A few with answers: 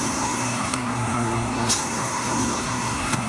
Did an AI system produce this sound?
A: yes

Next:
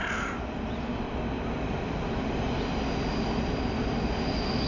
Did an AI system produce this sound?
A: no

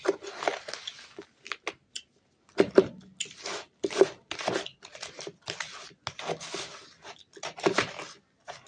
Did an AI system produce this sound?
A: no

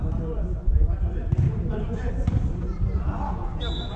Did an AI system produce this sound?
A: no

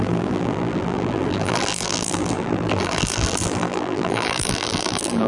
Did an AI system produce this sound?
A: yes